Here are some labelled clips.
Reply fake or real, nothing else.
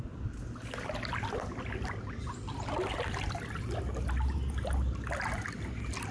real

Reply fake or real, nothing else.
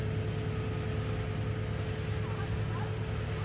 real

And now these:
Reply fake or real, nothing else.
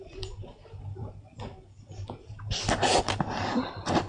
fake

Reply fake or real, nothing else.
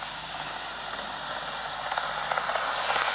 real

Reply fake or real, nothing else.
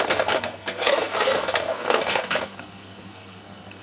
fake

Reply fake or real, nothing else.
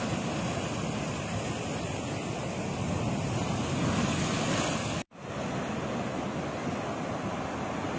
real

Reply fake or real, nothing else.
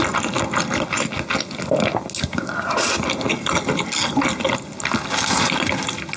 real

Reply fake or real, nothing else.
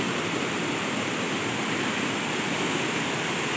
real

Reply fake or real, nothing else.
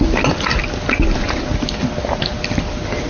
real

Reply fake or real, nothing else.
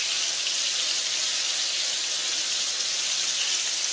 real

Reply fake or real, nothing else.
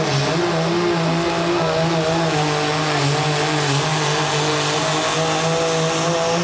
real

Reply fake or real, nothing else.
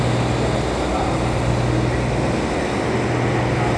real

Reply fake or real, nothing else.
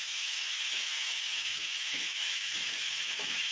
fake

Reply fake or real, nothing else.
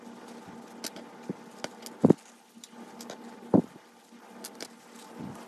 real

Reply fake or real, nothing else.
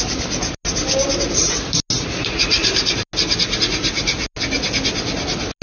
real